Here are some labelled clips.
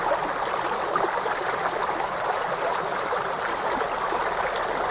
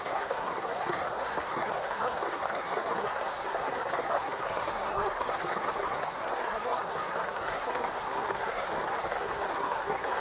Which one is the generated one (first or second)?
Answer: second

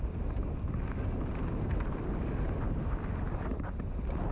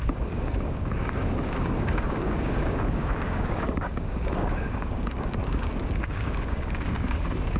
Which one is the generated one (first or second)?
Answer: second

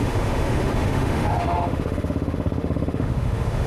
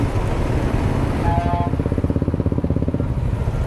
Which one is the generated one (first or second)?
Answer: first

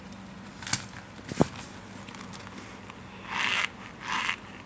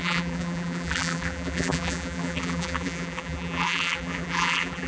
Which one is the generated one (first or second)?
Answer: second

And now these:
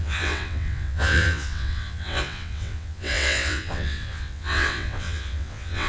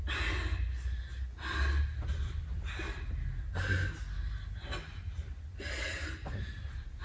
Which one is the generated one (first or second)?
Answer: first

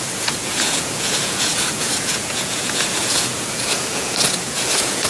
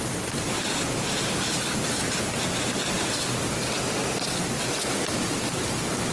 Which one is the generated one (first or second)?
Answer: first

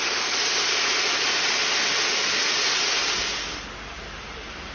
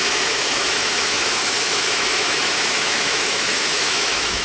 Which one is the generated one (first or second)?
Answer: second